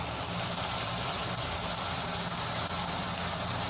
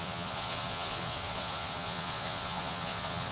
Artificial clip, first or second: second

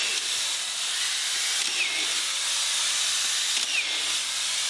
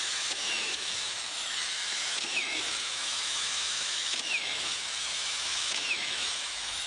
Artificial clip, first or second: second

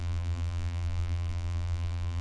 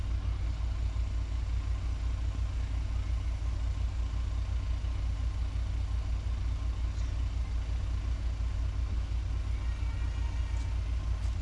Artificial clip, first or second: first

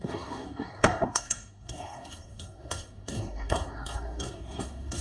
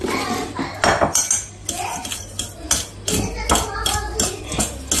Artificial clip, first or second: first